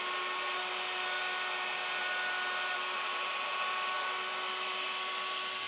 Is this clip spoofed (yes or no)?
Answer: no